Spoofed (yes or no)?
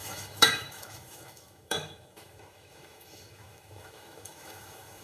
yes